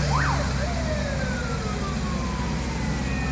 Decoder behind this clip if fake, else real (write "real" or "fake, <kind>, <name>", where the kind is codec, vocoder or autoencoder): real